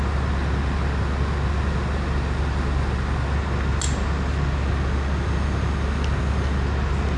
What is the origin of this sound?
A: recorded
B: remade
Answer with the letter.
A